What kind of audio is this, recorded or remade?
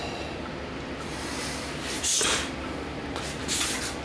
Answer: recorded